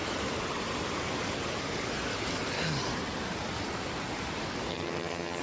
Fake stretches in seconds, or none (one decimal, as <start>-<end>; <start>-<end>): 4.7-5.4

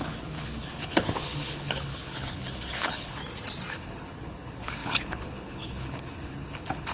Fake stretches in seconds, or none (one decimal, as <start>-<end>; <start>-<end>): 0.0-3.2; 3.7-6.9

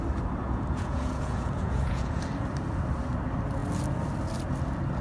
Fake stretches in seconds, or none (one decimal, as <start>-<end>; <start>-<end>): 0.4-2.2